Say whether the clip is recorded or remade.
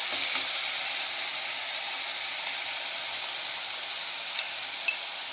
recorded